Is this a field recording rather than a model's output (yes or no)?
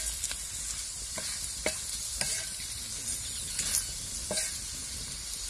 yes